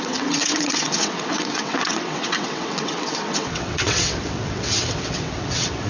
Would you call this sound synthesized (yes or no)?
yes